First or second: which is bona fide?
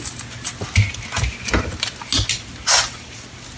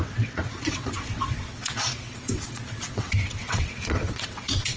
first